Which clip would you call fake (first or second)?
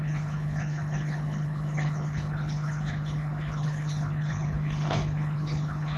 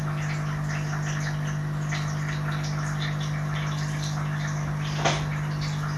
first